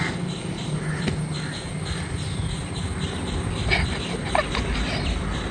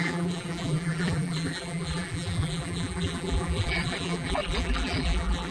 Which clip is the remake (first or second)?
second